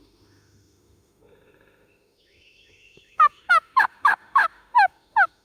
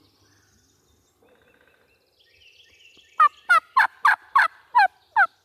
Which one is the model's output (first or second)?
first